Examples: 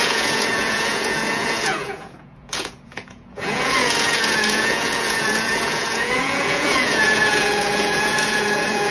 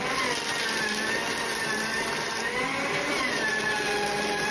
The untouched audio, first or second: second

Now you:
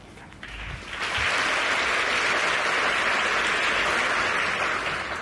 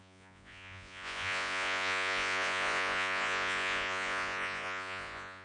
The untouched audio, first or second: first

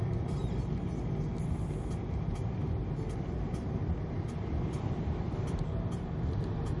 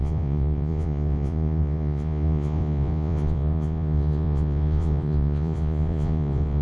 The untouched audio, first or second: first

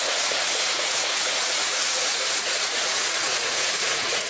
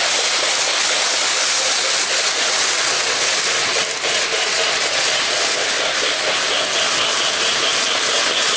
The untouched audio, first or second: second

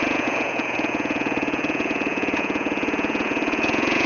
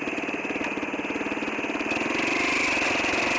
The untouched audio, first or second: second